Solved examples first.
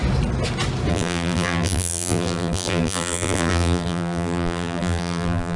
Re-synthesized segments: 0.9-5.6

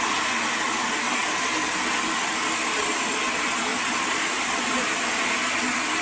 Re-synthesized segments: 1.2-3.1; 3.7-5.0